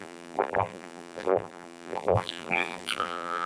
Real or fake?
fake